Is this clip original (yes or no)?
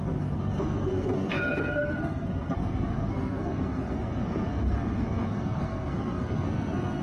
no